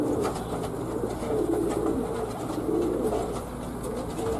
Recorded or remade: recorded